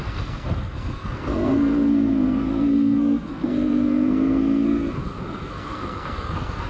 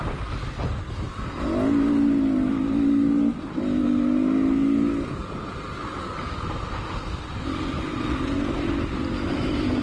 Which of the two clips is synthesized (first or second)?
first